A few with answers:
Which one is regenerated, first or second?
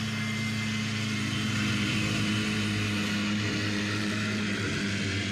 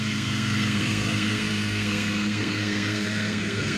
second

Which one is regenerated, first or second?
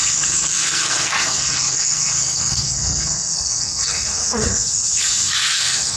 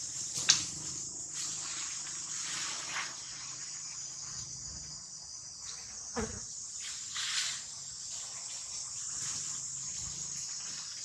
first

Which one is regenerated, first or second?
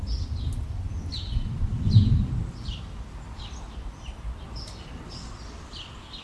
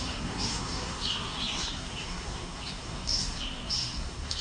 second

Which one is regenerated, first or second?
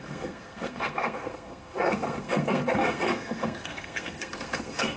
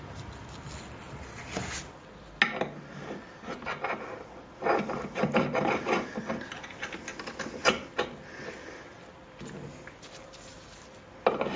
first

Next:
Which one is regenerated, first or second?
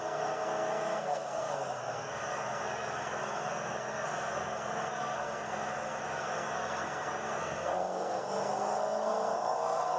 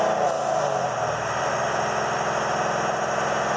first